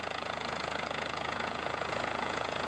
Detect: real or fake fake